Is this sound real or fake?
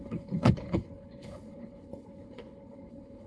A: fake